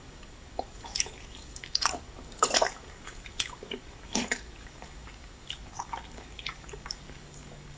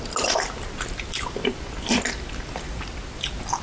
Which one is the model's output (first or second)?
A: first